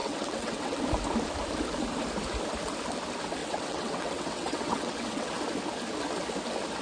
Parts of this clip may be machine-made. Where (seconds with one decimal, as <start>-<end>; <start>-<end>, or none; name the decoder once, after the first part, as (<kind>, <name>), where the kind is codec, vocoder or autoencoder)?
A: 0.0-0.8 (vocoder, WaveNeXt); 3.4-5.3